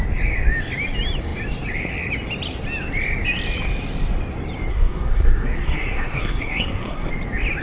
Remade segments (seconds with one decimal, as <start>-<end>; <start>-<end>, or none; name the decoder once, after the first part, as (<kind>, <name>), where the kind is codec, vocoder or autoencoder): 4.7-7.1 (codec, SNAC)